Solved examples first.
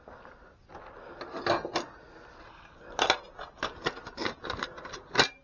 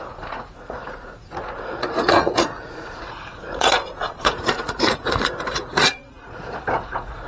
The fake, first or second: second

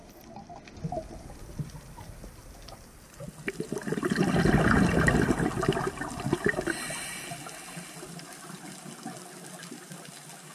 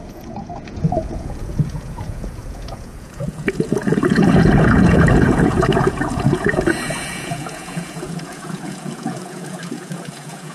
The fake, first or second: second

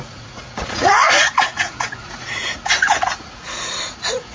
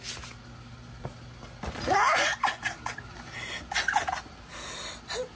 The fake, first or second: first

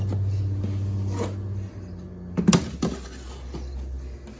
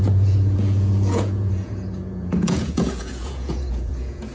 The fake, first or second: second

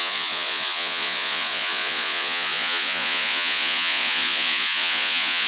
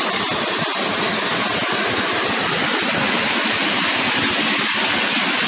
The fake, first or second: first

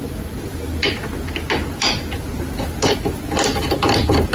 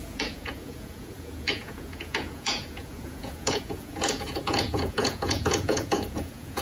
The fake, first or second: second